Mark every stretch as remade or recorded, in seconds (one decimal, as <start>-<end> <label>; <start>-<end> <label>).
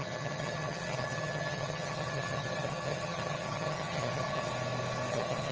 0.0-4.5 remade; 4.5-5.1 recorded; 5.1-5.5 remade